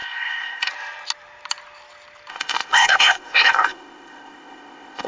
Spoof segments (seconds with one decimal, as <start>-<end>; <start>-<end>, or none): 0.0-0.7; 2.3-5.1